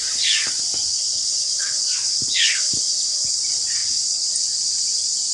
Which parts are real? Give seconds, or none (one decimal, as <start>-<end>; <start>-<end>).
0.0-0.9; 3.4-3.8; 4.3-5.3